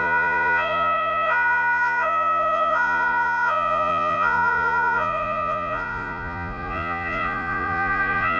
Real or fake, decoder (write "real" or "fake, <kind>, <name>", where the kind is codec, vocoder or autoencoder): fake, vocoder, Vocos